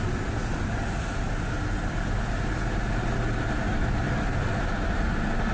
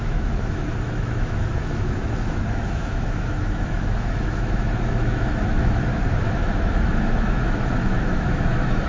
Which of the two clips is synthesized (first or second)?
second